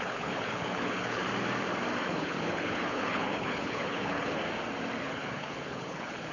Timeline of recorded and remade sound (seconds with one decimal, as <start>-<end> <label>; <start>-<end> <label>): 0.0-1.2 remade; 1.2-2.0 recorded; 2.0-4.4 remade; 4.4-5.0 recorded; 5.0-6.3 remade